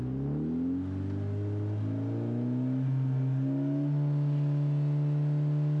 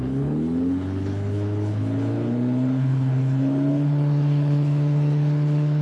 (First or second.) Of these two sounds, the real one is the first